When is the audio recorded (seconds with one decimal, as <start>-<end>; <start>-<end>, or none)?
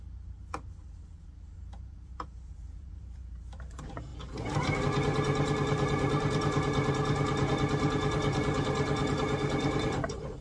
4.1-4.8